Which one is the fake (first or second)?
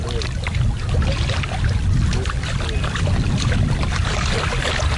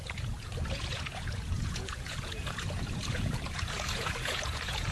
second